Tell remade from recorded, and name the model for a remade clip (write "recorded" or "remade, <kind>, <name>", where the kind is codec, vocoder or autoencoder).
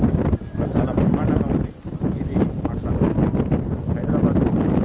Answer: remade, vocoder, BigVGAN v2